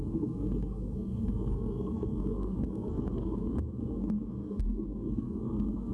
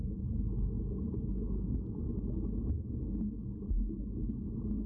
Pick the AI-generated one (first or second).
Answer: first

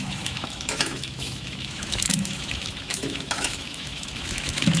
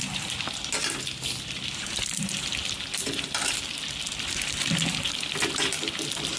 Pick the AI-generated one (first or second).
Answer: first